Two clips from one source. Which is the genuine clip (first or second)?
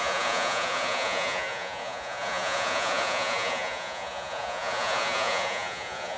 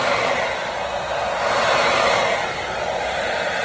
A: second